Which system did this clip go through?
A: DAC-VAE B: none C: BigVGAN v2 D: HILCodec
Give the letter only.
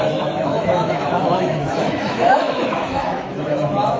A